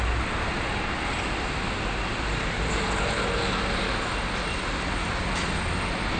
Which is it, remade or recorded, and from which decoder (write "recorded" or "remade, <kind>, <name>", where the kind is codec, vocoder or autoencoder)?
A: recorded